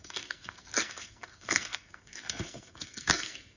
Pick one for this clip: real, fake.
fake